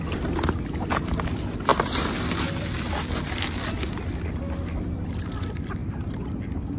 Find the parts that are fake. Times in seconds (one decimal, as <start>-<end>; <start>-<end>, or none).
none